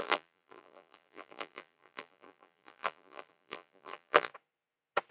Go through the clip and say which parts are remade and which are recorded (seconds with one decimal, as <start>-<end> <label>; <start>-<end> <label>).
0.0-4.3 remade; 4.3-5.1 recorded